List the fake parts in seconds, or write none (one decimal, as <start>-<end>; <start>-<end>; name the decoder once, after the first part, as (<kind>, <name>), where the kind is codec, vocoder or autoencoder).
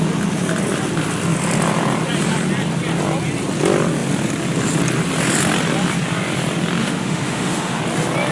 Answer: 6.8-7.8 (autoencoder, DAC-VAE)